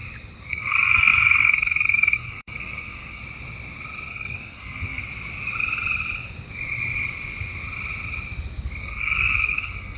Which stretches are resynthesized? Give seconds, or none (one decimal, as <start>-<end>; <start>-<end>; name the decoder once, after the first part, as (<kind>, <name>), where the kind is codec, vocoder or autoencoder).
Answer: 0.5-3.2 (codec, SNAC); 4.1-5.0; 8.8-10.0

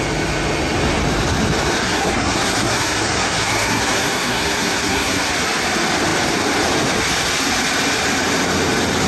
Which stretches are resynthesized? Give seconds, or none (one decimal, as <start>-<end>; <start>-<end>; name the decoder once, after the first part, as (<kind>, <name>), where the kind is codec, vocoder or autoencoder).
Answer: 1.8-5.3 (codec, SNAC)

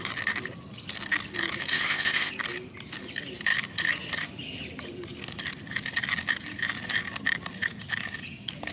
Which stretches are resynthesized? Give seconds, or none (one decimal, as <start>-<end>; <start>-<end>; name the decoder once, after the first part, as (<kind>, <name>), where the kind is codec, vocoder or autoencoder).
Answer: 1.7-2.3 (codec, ZipCodec)